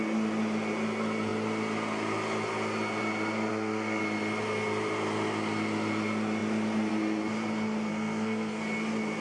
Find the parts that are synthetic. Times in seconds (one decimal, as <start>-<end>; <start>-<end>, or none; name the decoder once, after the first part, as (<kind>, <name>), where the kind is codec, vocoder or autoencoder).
3.5-4.0 (codec, SNAC); 7.9-8.6